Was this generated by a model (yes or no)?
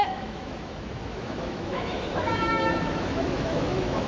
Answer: yes